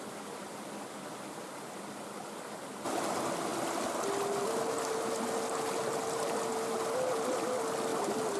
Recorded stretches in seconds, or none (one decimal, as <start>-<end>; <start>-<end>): 0.0-8.4